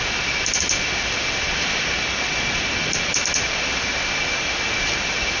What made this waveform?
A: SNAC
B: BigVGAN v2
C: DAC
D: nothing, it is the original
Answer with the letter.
D